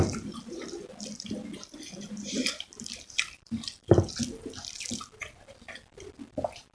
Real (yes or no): no